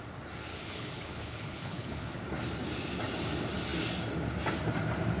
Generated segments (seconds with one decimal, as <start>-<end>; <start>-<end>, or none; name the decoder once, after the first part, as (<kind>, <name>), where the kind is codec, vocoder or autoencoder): 0.5-2.2 (codec, HILCodec)